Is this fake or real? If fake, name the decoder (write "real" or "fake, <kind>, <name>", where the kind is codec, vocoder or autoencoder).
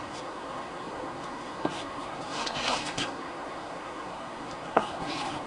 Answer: fake, codec, SNAC